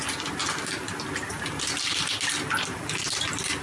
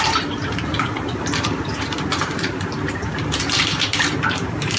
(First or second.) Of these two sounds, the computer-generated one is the second